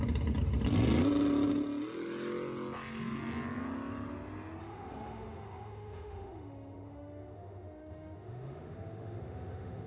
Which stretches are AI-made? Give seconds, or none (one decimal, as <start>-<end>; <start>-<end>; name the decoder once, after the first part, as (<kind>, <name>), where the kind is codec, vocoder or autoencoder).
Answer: 4.6-9.9 (autoencoder, DAC-VAE)